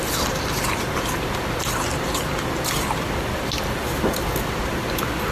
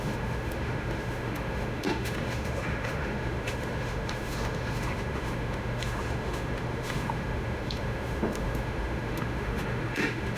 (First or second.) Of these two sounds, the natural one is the first